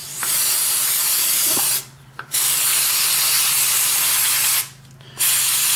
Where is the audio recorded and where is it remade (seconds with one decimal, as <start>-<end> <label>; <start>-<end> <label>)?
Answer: 0.0-2.9 remade; 2.9-5.8 recorded